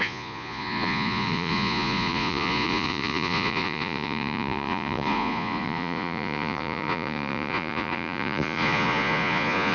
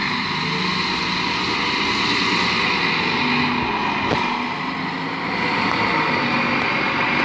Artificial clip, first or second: first